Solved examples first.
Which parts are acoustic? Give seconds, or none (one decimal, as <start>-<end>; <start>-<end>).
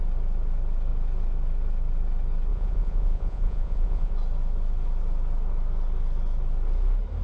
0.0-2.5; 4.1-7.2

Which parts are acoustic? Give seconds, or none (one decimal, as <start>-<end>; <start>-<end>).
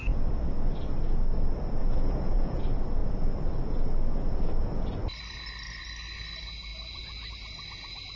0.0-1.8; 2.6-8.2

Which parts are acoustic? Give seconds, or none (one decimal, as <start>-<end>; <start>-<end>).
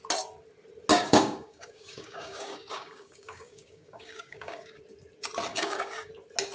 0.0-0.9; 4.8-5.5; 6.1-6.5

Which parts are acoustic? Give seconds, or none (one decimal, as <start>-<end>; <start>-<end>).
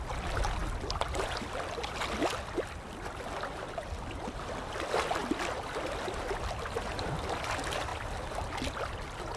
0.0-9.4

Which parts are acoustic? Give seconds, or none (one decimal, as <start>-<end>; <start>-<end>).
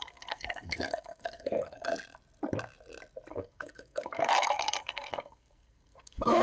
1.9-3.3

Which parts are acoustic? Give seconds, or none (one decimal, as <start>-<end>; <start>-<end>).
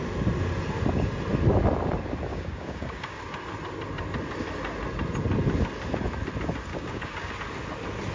0.0-2.3; 3.2-6.7; 7.3-8.1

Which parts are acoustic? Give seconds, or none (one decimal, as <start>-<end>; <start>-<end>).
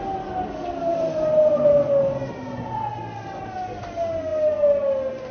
0.0-0.9; 2.0-5.3